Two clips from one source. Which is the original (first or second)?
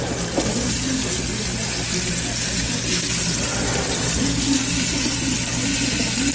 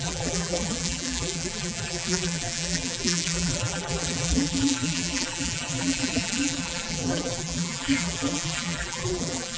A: first